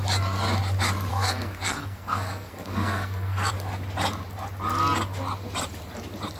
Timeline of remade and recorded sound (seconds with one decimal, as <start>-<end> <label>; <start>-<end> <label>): 0.0-1.1 recorded; 1.1-3.5 remade; 3.5-6.4 recorded